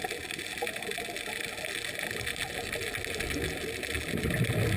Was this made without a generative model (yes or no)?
yes